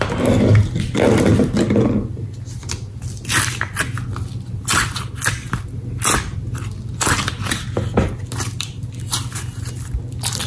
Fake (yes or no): no